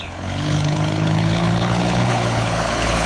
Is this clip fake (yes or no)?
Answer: yes